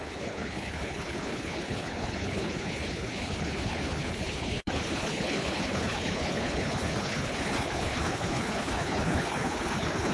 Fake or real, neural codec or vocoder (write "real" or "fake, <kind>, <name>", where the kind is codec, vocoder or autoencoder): fake, codec, HILCodec